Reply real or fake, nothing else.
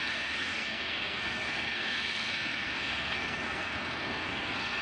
fake